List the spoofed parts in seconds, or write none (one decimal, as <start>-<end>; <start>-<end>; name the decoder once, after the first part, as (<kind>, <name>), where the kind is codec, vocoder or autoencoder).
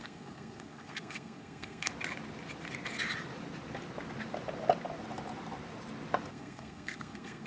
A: 0.0-1.9 (codec, SNAC); 6.3-7.5